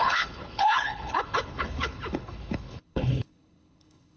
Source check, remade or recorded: remade